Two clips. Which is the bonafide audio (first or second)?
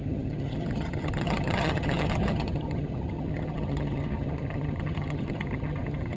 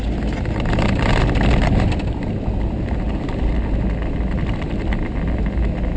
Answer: second